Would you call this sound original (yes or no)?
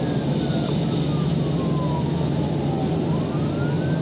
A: yes